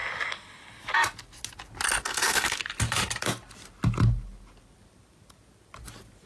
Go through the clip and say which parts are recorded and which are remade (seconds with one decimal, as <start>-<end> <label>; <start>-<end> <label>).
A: 0.0-2.0 recorded; 2.0-2.6 remade; 2.6-6.3 recorded